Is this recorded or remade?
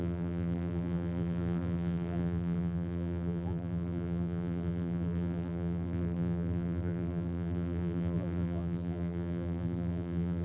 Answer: remade